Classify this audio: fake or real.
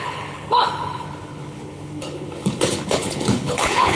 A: fake